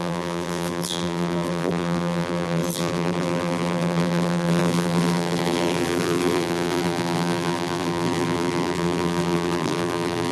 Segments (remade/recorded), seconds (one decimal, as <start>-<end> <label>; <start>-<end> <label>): 0.0-10.3 remade